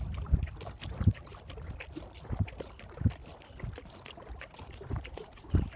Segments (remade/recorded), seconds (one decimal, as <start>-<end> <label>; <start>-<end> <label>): 0.0-1.3 remade; 1.3-4.8 recorded; 4.8-5.8 remade